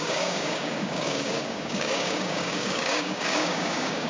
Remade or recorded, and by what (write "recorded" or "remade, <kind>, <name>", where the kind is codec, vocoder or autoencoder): remade, codec, DAC